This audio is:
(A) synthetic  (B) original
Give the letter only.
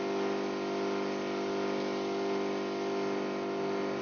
B